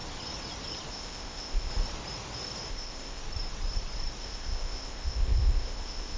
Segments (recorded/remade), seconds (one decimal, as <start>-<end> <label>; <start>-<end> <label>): 0.0-0.9 recorded; 0.9-1.7 remade; 1.7-2.7 recorded; 2.7-3.2 remade; 3.2-4.2 recorded; 4.2-6.2 remade

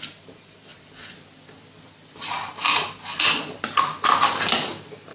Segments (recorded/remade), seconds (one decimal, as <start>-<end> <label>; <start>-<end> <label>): 0.0-5.1 recorded